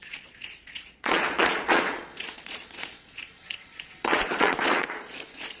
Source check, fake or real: fake